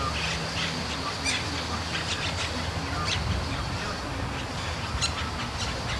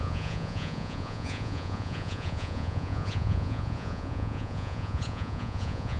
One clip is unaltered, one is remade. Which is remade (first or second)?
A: second